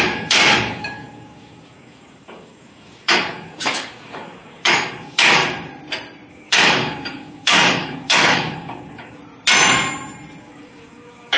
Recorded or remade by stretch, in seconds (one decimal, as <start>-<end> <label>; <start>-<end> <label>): 0.0-5.4 remade; 5.4-6.3 recorded; 6.3-9.2 remade; 9.2-10.4 recorded; 10.4-11.4 remade